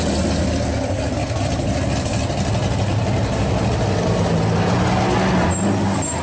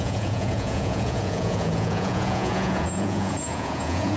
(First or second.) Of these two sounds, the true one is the first